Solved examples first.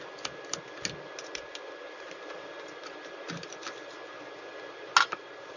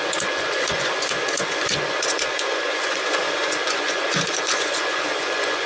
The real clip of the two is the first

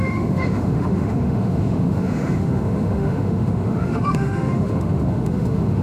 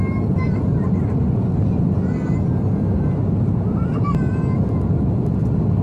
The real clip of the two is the second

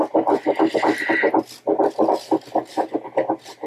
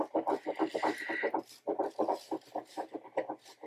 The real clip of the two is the first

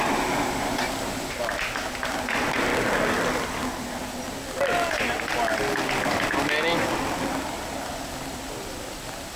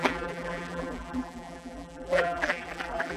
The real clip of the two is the first